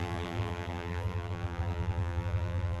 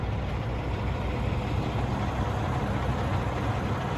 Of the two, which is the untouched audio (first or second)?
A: second